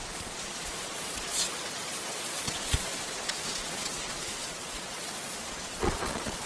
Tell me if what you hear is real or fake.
fake